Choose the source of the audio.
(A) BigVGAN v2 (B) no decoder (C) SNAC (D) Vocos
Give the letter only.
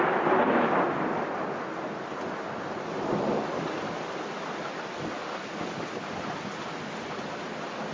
B